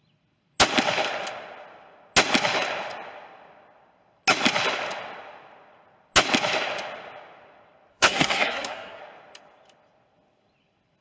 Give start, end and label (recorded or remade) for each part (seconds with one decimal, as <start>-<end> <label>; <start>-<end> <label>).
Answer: 0.0-7.9 recorded; 7.9-9.0 remade; 9.0-11.0 recorded